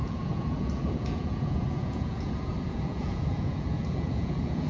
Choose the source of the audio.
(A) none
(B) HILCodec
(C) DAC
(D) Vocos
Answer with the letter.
D